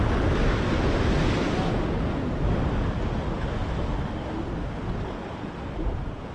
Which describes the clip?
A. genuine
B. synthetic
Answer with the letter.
A